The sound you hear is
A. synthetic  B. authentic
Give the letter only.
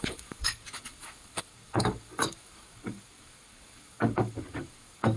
A